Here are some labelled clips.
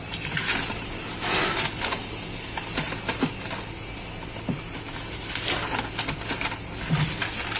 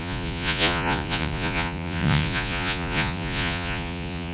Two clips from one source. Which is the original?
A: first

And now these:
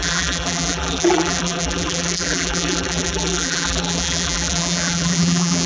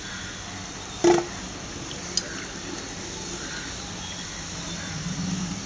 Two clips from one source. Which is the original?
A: second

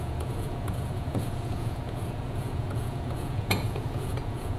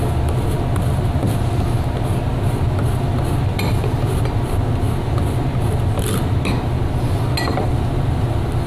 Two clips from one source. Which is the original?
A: second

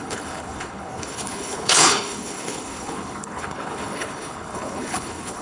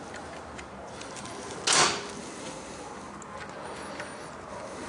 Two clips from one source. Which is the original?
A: second